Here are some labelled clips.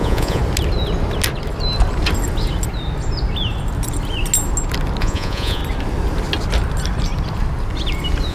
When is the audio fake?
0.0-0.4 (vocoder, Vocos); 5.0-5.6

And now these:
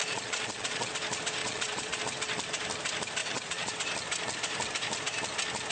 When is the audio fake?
0.0-0.9 (vocoder, Vocos); 1.4-2.0; 3.2-3.7

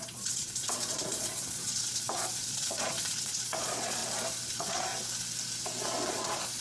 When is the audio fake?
0.0-4.0 (vocoder, Vocos); 4.5-4.9; 6.1-6.6

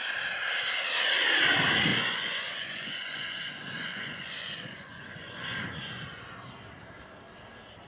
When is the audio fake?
1.9-6.5 (vocoder, Vocos)

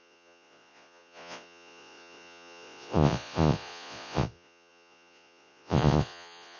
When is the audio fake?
0.0-6.6 (vocoder, Vocos)

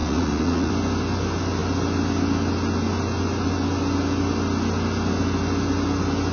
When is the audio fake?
0.0-0.7 (vocoder, Vocos)

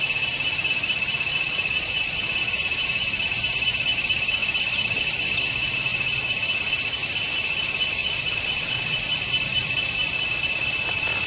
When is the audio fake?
1.3-2.2 (vocoder, Vocos); 8.0-9.0

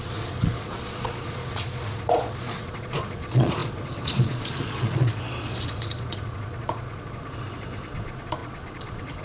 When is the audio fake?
0.0-9.2 (vocoder, Vocos)